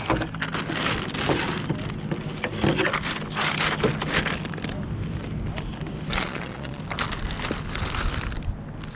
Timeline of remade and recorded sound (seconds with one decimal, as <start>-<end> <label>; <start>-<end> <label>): 0.0-6.1 recorded; 6.1-6.8 remade; 6.8-8.9 recorded